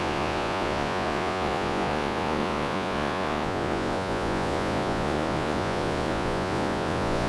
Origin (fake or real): fake